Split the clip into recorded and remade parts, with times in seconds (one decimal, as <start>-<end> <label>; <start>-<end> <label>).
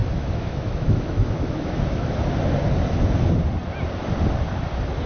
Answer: 0.0-2.2 remade; 2.2-5.1 recorded